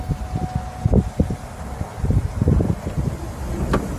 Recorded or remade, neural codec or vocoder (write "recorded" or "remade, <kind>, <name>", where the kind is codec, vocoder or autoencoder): recorded